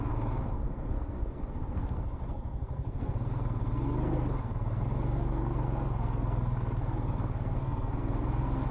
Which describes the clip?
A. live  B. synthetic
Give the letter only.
B